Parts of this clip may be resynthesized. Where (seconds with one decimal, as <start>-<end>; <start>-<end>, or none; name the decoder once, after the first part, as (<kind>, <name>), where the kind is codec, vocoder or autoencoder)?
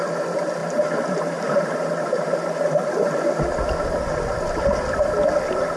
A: 0.6-4.1 (vocoder, BigVGAN v2)